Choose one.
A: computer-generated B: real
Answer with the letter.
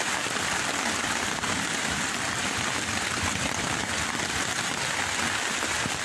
B